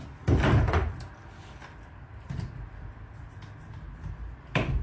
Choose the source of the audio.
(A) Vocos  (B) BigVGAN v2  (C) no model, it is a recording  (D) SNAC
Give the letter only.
C